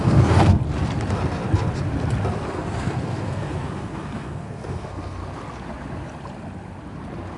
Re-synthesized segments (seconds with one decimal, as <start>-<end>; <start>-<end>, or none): 0.0-0.6; 2.5-5.2